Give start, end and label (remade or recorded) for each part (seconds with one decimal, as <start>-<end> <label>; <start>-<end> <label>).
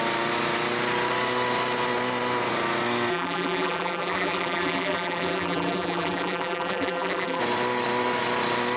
0.0-3.1 recorded; 3.1-7.4 remade; 7.4-8.8 recorded